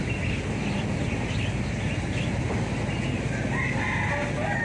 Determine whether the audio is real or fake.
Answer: real